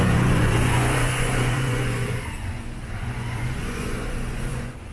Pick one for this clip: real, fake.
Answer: fake